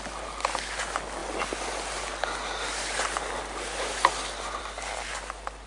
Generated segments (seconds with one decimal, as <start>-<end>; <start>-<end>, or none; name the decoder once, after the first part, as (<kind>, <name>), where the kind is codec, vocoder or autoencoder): none